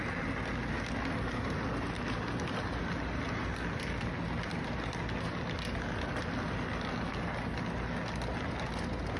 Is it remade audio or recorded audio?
recorded